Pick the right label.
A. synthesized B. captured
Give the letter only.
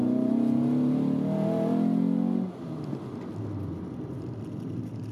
B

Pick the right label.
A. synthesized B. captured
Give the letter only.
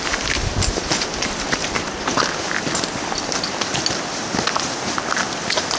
B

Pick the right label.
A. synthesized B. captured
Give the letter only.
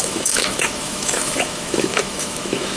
A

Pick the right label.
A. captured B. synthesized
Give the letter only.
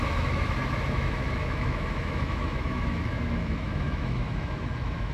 B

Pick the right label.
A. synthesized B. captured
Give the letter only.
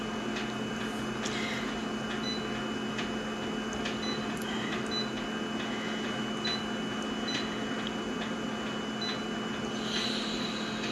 B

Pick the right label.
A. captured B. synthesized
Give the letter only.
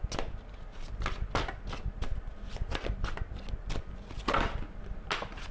A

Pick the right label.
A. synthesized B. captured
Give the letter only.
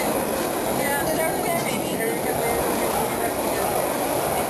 B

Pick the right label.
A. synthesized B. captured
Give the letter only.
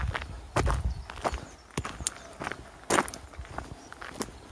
B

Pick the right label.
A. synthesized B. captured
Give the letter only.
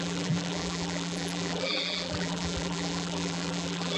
A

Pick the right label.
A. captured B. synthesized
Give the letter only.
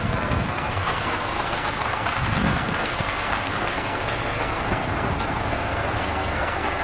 B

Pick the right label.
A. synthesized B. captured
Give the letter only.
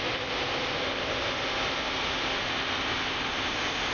B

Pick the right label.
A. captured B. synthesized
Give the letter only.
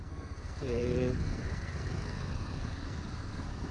B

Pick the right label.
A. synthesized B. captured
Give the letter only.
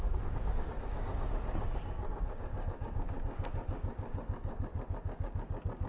A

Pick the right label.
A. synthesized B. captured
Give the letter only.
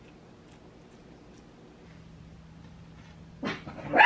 B